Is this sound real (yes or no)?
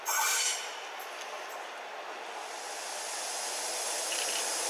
yes